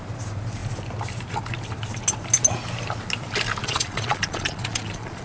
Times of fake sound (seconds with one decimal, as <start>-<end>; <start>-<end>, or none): 3.6-5.2